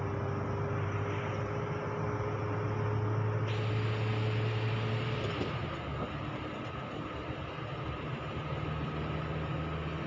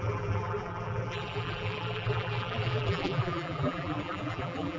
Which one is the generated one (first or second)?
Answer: second